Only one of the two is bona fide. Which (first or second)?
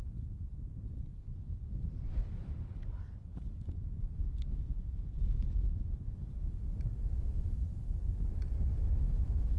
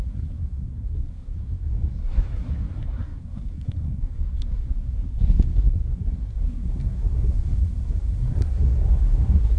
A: first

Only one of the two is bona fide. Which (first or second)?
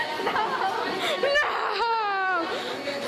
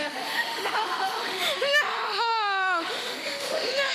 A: first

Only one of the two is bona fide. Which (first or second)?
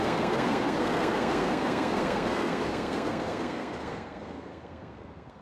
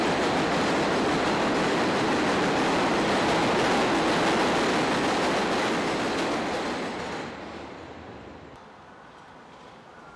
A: second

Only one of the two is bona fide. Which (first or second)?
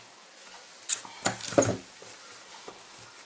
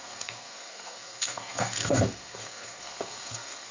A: first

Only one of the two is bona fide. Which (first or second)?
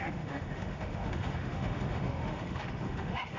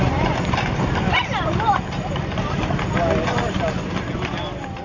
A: second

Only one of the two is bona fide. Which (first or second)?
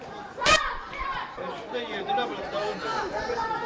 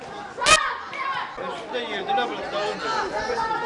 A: second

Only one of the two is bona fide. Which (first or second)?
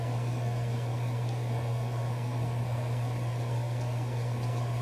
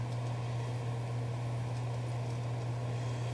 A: second